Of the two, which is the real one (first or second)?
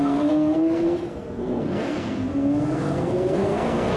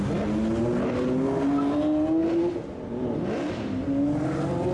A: second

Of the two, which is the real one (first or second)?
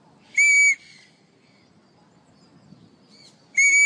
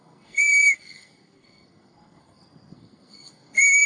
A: first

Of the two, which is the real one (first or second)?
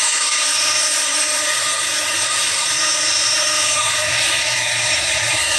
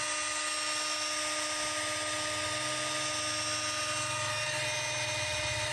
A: second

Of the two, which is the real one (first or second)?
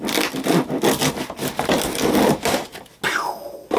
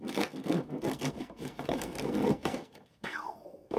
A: first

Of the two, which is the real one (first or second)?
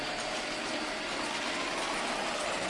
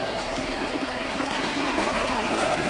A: first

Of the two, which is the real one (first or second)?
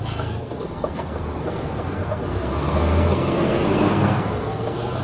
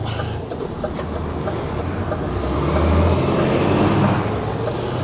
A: second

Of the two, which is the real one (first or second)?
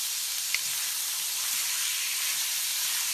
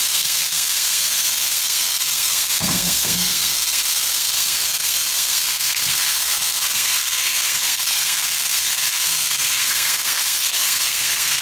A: first